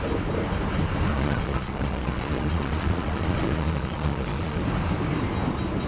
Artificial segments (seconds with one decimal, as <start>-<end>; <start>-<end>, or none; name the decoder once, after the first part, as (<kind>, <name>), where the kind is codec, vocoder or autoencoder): 1.1-4.6 (vocoder, Vocos)